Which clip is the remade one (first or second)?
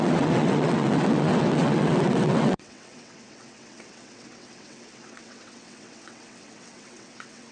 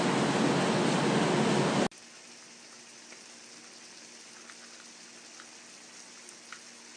first